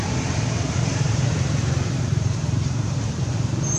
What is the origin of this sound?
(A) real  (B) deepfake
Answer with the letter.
B